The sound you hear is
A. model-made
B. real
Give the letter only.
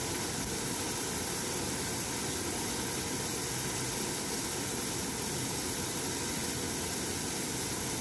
B